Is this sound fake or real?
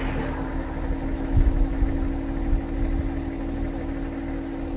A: real